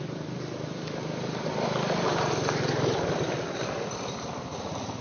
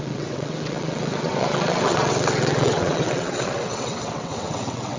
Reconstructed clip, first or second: second